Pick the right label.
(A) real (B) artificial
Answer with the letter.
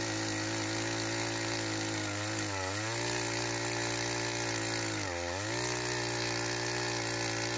A